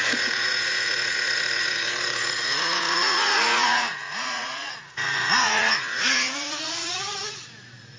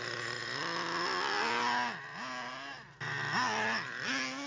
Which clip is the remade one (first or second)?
first